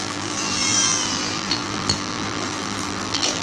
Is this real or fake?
fake